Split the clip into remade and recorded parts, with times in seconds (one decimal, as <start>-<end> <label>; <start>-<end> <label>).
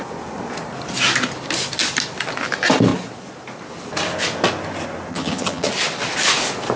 0.0-5.1 recorded; 5.1-5.7 remade; 5.7-6.8 recorded